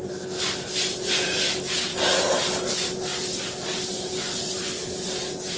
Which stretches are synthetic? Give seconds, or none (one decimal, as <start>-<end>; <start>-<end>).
none